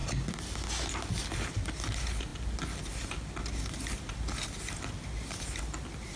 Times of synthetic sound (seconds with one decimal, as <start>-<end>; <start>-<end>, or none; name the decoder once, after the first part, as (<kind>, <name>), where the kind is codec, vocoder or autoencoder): none